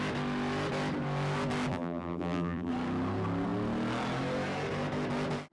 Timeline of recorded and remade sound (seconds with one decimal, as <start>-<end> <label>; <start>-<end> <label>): 0.0-1.7 recorded; 1.7-2.7 remade; 2.7-5.5 recorded